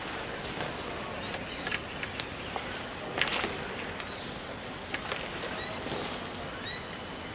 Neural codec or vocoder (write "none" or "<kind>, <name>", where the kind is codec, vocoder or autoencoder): none